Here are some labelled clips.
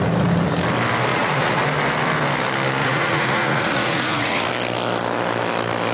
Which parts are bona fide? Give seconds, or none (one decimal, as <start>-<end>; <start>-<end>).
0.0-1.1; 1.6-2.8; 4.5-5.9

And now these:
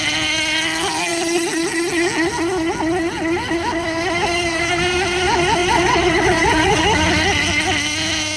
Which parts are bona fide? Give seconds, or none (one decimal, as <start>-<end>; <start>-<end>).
0.0-5.6; 6.8-8.4

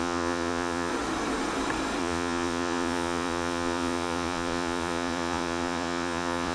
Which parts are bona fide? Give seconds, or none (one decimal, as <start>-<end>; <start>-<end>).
0.9-2.0